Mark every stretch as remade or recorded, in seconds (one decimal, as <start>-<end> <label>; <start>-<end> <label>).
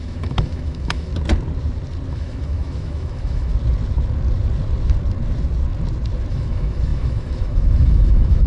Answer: 0.0-1.1 remade; 1.1-2.1 recorded; 2.1-3.5 remade; 3.5-6.3 recorded; 6.3-8.5 remade